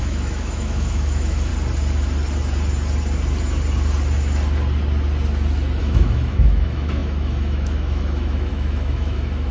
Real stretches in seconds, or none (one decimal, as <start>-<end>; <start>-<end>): 1.5-5.8